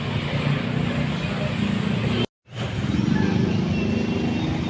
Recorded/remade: recorded